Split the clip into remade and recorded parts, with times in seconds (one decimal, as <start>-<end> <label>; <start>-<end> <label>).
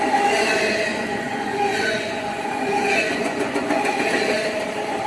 0.0-0.9 recorded; 0.9-4.0 remade; 4.0-5.1 recorded